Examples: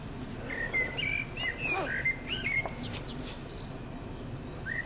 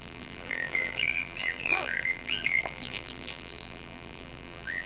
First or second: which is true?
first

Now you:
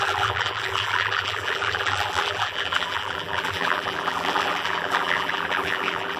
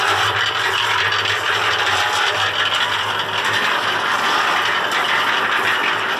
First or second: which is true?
second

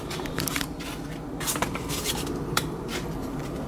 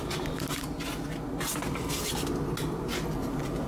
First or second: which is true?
second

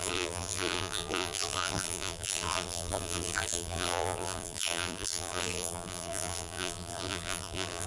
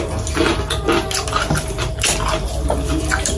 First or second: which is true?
second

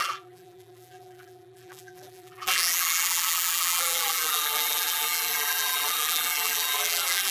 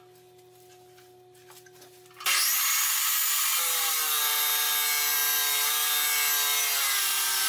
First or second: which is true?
second